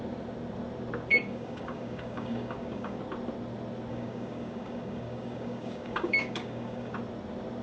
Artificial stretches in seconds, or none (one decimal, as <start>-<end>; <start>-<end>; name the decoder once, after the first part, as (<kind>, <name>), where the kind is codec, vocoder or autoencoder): 1.1-3.0 (codec, DAC); 3.9-7.0